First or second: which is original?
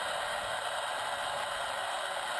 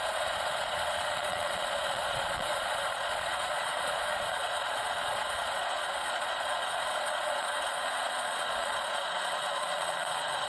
first